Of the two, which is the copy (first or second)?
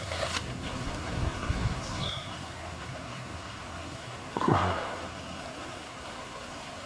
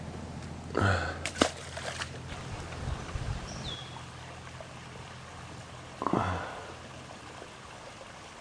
first